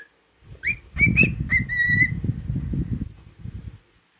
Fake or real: fake